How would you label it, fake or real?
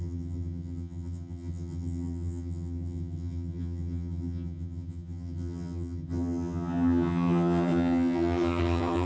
fake